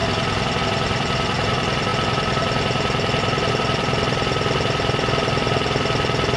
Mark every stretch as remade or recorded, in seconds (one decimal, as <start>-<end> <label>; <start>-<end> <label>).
0.0-6.4 recorded